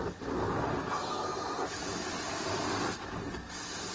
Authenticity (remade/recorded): recorded